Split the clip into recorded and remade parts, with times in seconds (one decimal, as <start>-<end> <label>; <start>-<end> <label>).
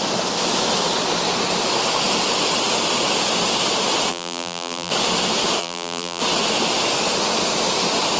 0.0-4.1 recorded; 4.1-4.9 remade; 4.9-5.6 recorded; 5.6-6.2 remade; 6.2-8.2 recorded